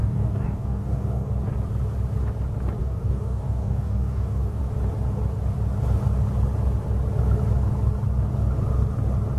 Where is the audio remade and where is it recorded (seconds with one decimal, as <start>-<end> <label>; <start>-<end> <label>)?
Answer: 0.0-1.3 remade; 1.3-2.8 recorded; 2.8-4.6 remade; 4.6-9.4 recorded